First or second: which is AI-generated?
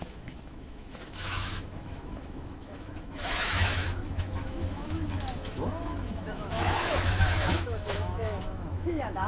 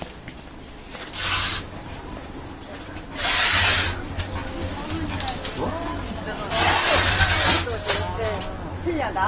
first